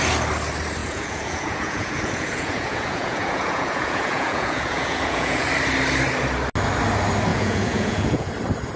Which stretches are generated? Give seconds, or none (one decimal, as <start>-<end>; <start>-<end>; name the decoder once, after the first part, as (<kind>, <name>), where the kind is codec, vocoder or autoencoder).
0.8-5.5 (vocoder, Vocos); 7.3-8.3